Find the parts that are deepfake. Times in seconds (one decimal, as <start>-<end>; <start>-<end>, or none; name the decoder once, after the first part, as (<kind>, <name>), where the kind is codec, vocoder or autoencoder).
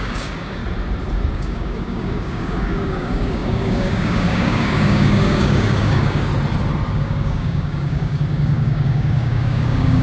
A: 0.0-0.6 (codec, DAC); 1.3-6.3; 6.9-10.0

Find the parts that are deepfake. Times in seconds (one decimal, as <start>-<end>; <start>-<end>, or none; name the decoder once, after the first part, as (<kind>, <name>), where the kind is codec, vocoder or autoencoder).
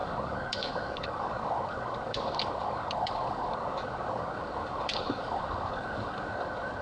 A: 0.0-6.8 (codec, DAC)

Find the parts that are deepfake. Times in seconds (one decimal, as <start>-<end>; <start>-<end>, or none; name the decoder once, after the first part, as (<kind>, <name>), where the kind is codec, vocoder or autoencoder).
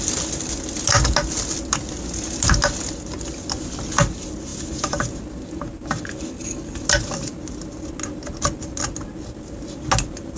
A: none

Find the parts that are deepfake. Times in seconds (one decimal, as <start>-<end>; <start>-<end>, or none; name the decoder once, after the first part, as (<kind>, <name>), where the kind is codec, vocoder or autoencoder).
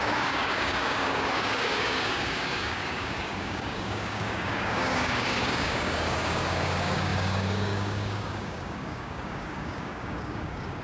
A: 0.0-10.8 (codec, DAC)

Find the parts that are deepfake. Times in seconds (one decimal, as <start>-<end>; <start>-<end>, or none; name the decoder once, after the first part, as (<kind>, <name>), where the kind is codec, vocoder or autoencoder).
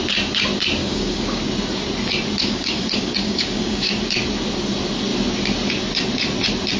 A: 0.8-1.4 (codec, DAC); 2.4-3.9